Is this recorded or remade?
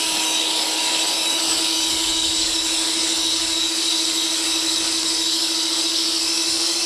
remade